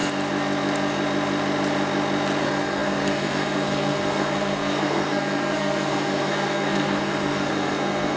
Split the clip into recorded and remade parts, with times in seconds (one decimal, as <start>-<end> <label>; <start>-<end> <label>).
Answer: 0.0-2.4 recorded; 2.4-8.2 remade